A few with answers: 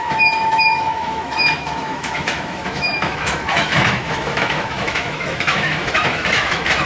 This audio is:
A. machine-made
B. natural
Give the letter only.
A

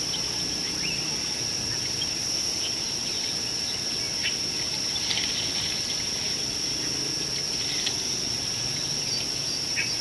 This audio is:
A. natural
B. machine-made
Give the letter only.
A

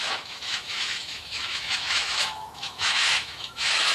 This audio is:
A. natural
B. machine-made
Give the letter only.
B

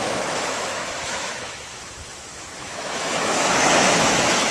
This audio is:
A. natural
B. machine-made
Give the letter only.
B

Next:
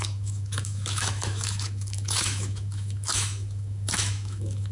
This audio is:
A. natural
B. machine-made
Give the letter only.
B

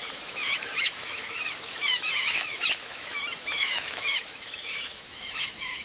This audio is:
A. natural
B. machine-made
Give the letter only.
B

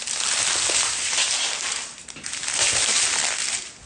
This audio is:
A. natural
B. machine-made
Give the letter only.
A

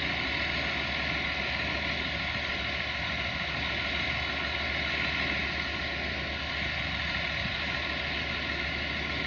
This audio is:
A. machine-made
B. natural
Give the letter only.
B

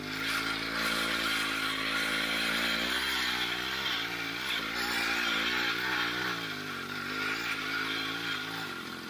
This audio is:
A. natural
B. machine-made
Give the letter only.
A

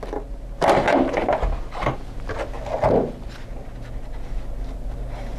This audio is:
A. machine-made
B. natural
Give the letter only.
B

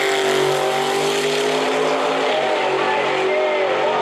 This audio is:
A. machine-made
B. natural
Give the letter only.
B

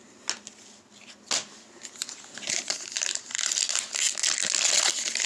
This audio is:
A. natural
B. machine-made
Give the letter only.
A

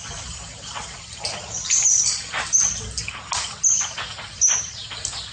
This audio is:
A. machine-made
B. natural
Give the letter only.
B